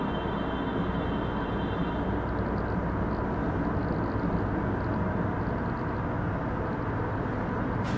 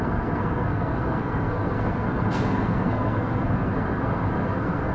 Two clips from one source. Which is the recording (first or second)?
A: first